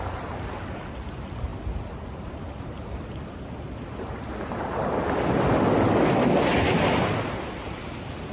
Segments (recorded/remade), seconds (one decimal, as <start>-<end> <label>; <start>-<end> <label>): 0.0-8.3 recorded